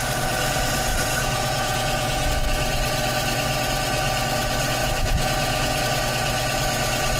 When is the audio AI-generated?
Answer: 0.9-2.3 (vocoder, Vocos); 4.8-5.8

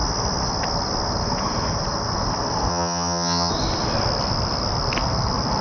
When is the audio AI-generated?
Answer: 2.7-3.5 (vocoder, HiFi-GAN)

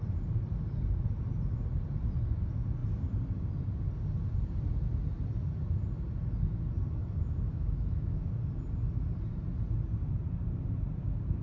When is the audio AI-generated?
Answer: 7.0-8.3 (autoencoder, DAC-VAE)